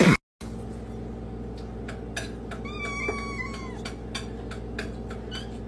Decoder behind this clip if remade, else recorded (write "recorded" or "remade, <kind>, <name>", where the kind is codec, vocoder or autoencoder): recorded